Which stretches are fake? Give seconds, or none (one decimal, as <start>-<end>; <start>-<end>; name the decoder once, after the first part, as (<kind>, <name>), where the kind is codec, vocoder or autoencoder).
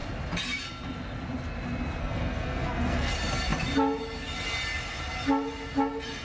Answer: 2.0-3.1 (codec, SNAC)